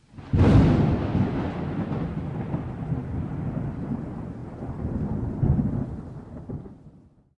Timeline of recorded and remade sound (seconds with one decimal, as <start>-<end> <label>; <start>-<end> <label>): 0.0-7.4 recorded